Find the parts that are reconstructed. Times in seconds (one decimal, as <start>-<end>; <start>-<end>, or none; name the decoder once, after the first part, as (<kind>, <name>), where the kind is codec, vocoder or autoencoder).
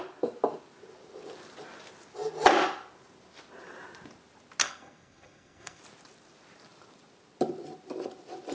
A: 4.6-5.8 (codec, SNAC)